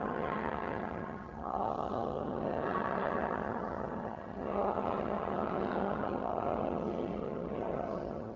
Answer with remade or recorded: remade